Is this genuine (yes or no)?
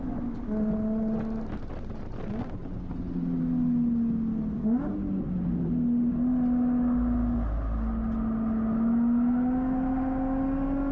yes